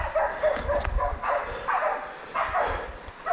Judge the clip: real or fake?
real